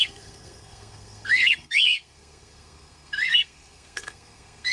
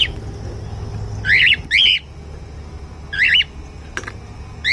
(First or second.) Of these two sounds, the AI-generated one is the first